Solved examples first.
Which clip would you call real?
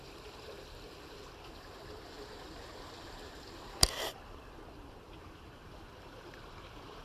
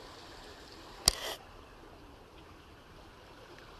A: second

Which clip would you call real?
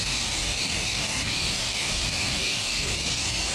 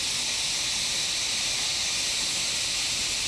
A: second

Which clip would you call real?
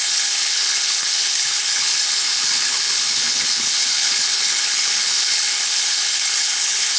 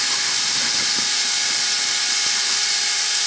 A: second